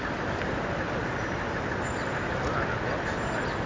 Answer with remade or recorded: recorded